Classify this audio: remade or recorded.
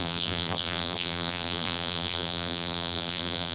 remade